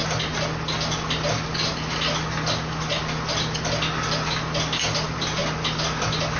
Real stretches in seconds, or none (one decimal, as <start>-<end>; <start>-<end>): 0.0-6.4